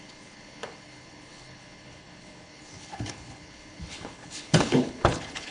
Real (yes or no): no